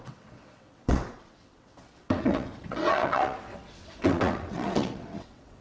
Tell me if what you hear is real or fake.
fake